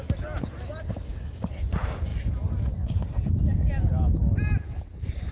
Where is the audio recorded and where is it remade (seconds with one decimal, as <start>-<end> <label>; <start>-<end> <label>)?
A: 0.0-5.3 recorded